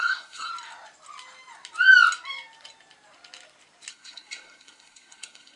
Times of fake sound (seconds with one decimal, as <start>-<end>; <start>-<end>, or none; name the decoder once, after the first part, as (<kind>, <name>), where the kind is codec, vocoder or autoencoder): 0.0-0.5 (codec, SNAC); 3.9-5.6